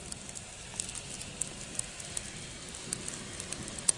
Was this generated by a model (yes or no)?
no